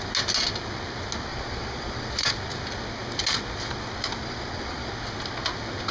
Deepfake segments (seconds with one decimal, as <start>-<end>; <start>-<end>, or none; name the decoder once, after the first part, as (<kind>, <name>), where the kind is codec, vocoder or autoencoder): 1.3-2.3 (vocoder, Vocos); 4.2-4.9